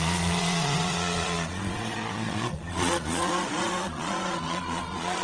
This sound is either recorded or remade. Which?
remade